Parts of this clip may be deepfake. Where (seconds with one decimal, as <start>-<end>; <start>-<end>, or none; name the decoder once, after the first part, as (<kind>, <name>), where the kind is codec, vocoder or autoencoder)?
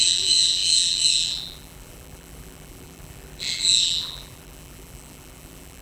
0.0-5.8 (vocoder, BigVGAN v2)